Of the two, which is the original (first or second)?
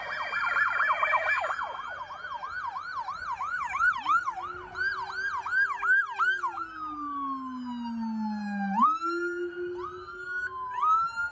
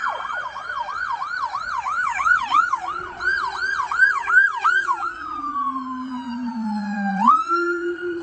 first